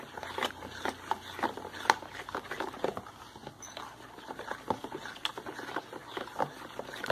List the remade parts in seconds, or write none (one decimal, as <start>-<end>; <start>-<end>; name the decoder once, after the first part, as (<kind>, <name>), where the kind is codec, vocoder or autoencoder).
none